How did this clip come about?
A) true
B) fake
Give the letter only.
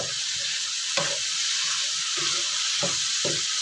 A